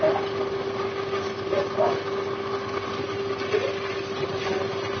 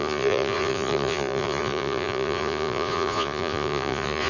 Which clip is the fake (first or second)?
second